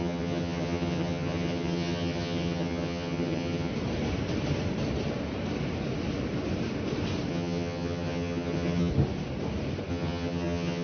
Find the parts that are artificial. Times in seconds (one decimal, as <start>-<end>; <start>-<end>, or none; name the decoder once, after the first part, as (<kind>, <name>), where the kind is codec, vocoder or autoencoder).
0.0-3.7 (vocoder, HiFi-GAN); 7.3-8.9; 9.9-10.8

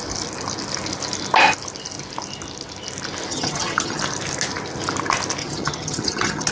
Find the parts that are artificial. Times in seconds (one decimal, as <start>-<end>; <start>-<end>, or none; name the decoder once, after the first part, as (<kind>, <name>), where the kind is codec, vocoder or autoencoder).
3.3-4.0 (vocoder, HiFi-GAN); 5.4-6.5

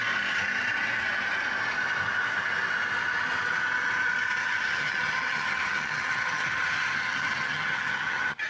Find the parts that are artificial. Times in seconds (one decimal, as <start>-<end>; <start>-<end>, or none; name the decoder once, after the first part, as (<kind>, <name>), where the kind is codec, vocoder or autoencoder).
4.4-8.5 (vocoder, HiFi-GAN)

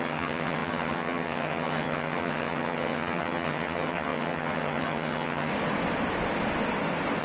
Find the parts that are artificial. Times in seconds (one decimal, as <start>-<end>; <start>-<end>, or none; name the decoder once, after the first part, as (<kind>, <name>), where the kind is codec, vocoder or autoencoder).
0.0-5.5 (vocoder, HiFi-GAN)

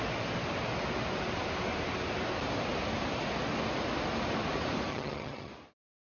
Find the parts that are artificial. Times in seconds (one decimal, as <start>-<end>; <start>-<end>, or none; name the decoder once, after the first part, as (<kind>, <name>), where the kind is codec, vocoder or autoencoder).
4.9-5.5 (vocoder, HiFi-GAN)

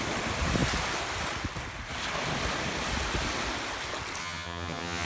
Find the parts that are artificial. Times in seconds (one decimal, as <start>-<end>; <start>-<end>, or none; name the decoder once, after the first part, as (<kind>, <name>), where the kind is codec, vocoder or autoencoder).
4.2-5.1 (vocoder, HiFi-GAN)

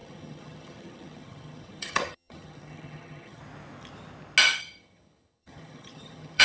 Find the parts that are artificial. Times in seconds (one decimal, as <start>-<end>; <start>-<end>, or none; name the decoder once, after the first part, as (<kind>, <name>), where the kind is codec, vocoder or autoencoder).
0.0-3.4 (vocoder, HiFi-GAN); 4.6-6.4